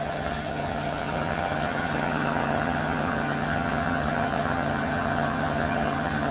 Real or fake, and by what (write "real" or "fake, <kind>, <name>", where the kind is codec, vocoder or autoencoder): fake, vocoder, HiFi-GAN